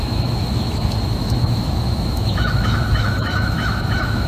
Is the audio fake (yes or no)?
yes